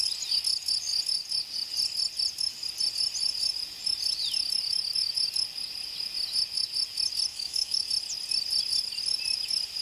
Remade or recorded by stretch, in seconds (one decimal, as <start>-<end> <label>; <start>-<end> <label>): 0.0-7.3 recorded; 7.3-7.9 remade; 7.9-9.8 recorded